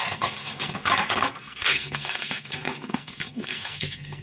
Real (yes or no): no